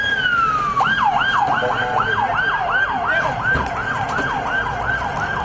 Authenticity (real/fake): real